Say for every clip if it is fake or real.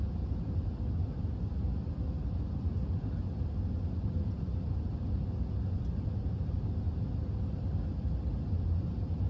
real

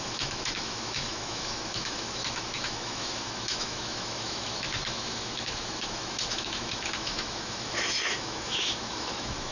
fake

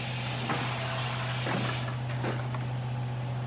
real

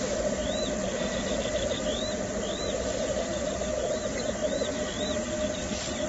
real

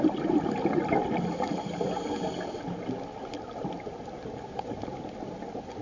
real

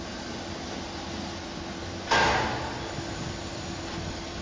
real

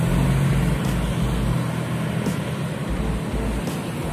real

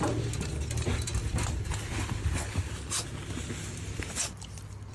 real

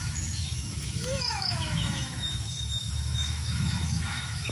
fake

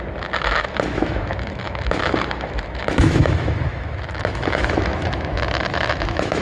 fake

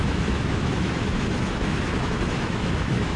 fake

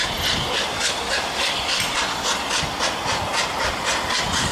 real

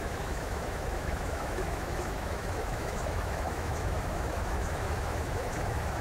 fake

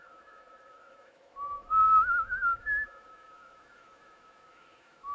fake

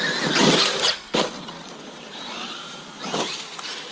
real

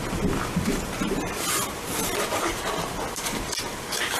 real